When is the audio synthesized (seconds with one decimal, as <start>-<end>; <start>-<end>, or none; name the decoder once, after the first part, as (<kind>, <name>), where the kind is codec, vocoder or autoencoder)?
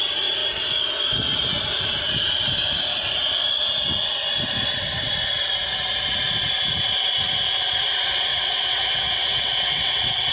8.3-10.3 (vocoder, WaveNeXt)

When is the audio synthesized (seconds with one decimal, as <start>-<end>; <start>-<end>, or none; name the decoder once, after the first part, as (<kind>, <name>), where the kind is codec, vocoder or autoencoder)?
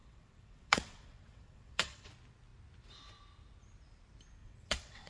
0.0-2.1 (vocoder, WaveNeXt); 4.4-5.1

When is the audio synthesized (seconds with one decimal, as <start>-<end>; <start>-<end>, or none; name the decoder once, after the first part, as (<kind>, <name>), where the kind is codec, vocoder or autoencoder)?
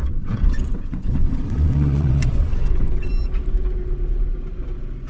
0.0-3.1 (vocoder, WaveNeXt)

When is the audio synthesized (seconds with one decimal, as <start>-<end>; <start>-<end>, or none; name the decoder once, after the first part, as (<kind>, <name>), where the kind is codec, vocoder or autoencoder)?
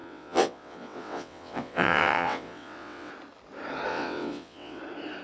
0.0-3.1 (vocoder, WaveNeXt); 3.9-4.8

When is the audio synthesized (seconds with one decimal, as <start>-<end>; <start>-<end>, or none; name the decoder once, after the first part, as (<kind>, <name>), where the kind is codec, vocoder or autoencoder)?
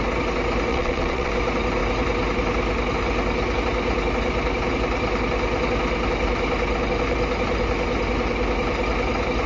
0.7-1.3 (vocoder, WaveNeXt)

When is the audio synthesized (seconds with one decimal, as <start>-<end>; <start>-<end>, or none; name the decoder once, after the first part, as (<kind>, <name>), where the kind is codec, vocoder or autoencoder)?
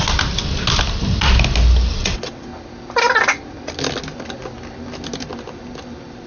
1.9-2.5 (vocoder, WaveNeXt)